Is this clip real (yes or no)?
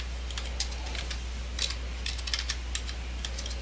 yes